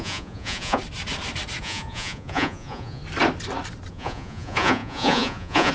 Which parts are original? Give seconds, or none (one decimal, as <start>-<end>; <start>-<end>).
0.8-1.6; 3.0-3.9